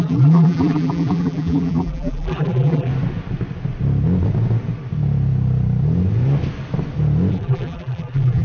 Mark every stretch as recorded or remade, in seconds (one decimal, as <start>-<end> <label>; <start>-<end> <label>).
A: 0.0-2.9 remade; 2.9-7.3 recorded; 7.3-8.4 remade